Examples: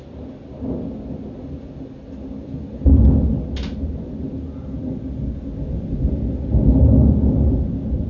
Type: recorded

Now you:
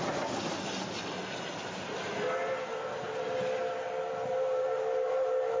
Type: recorded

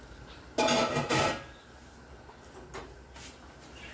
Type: recorded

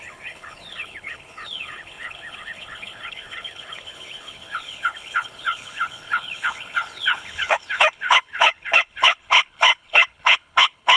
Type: remade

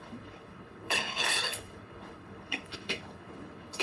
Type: remade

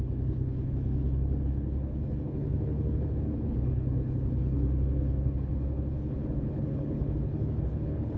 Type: remade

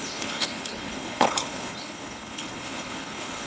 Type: remade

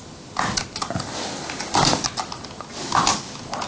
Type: recorded